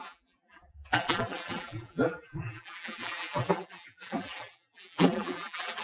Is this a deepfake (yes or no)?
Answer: yes